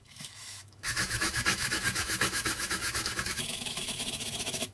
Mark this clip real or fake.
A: fake